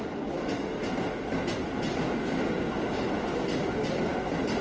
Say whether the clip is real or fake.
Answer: real